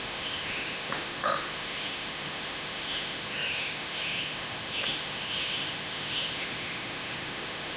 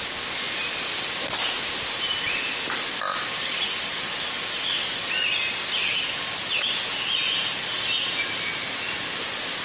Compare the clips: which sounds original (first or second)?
second